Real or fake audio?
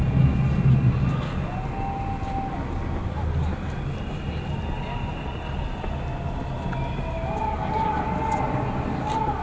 real